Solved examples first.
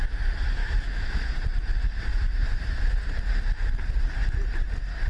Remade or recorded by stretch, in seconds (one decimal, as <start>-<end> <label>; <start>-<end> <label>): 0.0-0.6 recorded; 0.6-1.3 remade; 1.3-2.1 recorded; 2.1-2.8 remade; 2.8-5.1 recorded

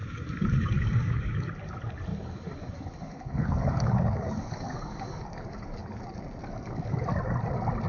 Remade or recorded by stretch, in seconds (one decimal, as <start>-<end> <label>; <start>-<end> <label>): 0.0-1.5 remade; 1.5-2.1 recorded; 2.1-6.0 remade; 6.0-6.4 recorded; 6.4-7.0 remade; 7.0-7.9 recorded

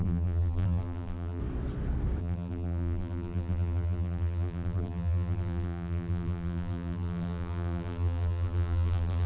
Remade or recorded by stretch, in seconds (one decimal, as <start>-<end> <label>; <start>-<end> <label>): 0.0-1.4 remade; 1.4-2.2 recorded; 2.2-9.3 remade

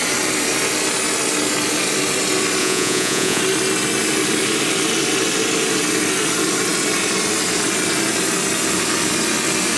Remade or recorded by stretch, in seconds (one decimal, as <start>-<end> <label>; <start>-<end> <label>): 0.0-2.6 recorded; 2.6-3.4 remade; 3.4-9.8 recorded

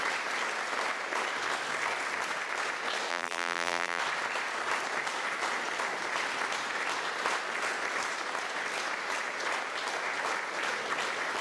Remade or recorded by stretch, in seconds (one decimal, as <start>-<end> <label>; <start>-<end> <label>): 0.0-3.1 recorded; 3.1-4.0 remade; 4.0-11.4 recorded

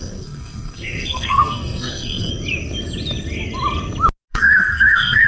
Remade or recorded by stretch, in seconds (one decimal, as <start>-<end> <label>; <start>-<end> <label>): 0.0-2.3 remade; 2.3-4.3 recorded; 4.3-5.3 remade

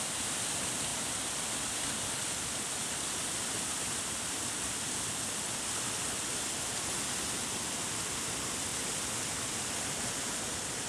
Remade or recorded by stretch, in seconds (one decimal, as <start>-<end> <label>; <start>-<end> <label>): 0.0-0.9 recorded; 0.9-5.0 remade; 5.0-8.7 recorded; 8.7-9.2 remade; 9.2-10.9 recorded